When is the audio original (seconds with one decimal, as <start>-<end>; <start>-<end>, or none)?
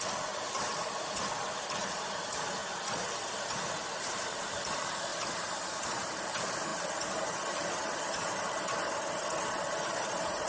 5.1-6.1